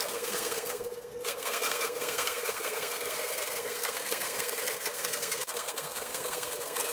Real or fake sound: fake